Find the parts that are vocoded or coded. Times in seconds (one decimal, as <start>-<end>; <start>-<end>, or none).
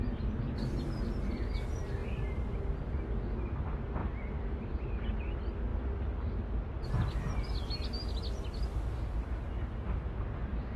2.0-2.5; 4.0-5.0